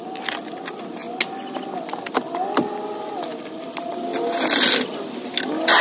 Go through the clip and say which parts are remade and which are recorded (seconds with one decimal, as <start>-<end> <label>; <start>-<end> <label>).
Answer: 0.0-5.8 recorded